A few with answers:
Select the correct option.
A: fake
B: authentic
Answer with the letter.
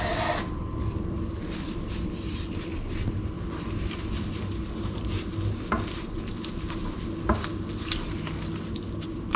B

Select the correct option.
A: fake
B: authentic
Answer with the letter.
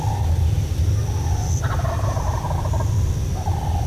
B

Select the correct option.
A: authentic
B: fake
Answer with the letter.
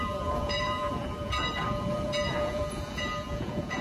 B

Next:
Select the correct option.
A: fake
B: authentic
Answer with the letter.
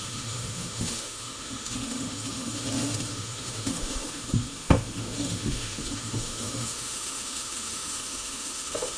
A